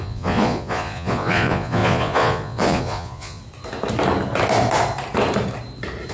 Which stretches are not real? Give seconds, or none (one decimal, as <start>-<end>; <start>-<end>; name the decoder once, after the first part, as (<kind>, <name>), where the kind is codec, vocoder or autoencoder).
0.0-3.4 (vocoder, Vocos)